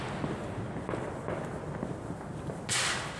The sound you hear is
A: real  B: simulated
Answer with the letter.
A